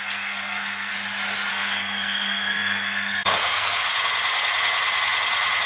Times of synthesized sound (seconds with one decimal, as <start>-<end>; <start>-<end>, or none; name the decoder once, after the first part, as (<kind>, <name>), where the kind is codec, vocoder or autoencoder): 0.0-0.9 (codec, SNAC); 1.5-3.8